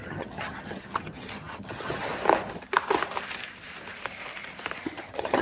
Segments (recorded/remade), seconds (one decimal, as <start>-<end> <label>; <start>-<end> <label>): 0.0-2.1 remade; 2.1-4.8 recorded; 4.8-5.4 remade